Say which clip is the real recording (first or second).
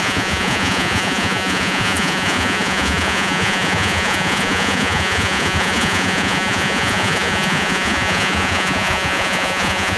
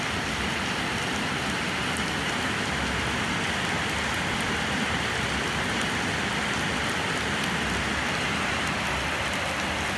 second